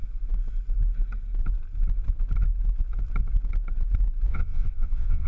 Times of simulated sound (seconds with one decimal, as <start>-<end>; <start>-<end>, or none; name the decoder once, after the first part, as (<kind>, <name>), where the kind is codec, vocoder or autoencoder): 4.3-5.3 (vocoder, WaveNeXt)